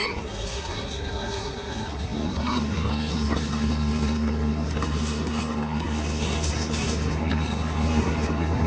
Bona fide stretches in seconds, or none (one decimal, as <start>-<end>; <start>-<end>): none